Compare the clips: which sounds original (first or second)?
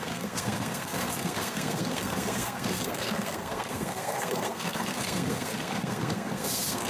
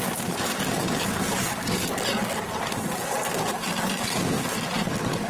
second